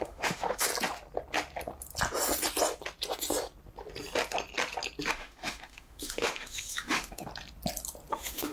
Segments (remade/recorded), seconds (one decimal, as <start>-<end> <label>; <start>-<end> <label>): 0.0-0.7 remade; 0.7-5.1 recorded; 5.1-7.3 remade; 7.3-8.1 recorded; 8.1-8.5 remade